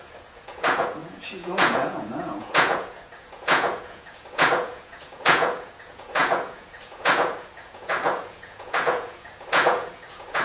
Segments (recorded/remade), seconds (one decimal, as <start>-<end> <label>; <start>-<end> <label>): 0.0-10.4 remade